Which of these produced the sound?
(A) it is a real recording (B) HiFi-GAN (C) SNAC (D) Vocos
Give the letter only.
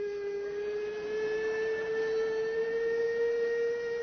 A